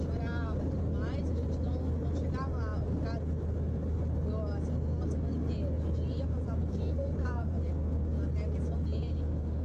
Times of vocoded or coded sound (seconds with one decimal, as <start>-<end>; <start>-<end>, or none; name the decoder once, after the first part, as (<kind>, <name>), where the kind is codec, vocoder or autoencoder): 6.6-7.6 (vocoder, BigVGAN v2)